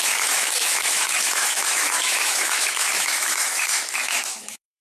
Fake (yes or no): yes